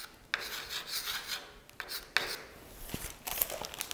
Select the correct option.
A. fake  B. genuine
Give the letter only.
B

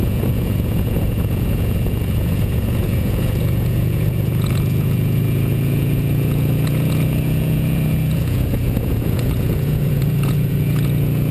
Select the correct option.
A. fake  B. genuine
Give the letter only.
A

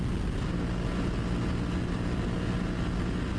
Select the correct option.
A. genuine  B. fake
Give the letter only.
A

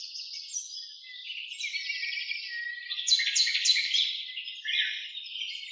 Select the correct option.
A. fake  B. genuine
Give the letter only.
B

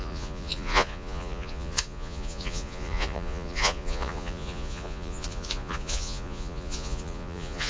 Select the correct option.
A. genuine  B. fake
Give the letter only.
B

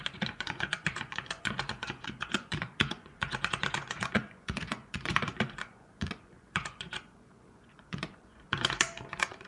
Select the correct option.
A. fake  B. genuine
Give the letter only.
A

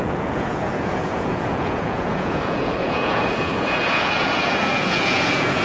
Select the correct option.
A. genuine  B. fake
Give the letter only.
B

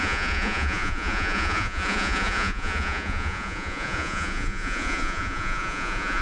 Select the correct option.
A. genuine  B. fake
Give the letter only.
B